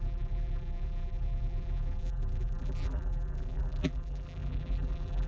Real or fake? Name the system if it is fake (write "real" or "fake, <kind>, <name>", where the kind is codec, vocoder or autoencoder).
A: fake, vocoder, BigVGAN v2